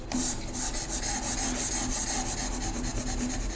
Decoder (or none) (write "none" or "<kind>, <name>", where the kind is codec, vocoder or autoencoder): none